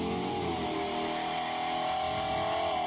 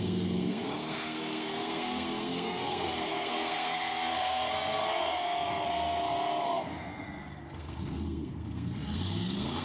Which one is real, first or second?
first